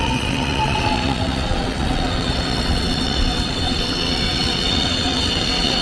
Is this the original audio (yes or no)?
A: no